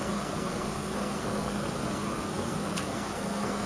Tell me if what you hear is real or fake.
fake